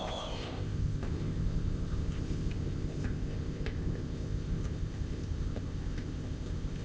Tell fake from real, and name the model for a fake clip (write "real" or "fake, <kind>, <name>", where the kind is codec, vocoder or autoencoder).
fake, codec, ZipCodec